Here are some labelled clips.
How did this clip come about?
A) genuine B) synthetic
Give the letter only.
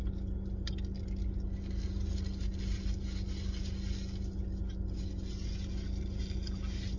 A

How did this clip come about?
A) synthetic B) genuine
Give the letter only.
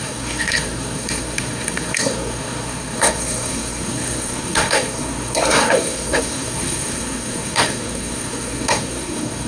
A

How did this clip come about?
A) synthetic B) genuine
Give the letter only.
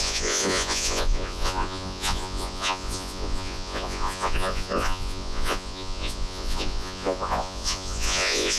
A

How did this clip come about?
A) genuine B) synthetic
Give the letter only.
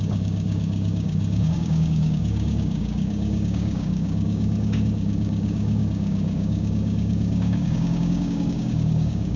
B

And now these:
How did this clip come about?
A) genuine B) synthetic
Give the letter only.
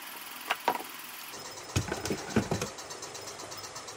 A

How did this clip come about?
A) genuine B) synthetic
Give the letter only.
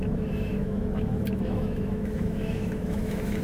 B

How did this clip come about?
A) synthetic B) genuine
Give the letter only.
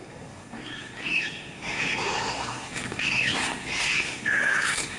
A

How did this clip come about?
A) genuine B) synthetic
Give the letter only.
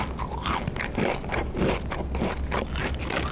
A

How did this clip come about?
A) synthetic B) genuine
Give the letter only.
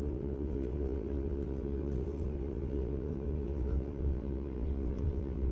A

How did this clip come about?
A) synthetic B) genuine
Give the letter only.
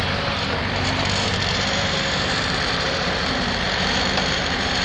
A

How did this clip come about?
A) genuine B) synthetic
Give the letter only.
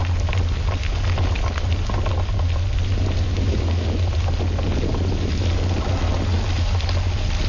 A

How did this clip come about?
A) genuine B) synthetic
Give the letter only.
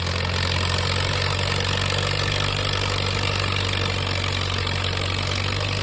A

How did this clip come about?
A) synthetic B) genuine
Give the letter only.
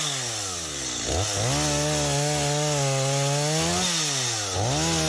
B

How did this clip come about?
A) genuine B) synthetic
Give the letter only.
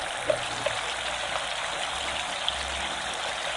A